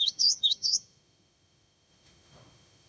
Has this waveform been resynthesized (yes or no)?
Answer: yes